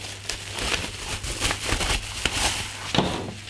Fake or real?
real